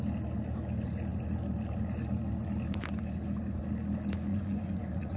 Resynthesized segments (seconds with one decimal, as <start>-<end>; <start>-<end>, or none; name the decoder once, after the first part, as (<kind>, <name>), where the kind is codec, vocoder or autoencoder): 4.3-5.2 (vocoder, Vocos)